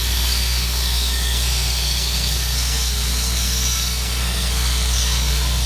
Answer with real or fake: fake